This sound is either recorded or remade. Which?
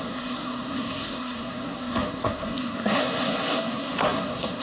remade